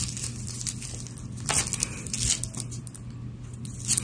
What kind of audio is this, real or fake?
real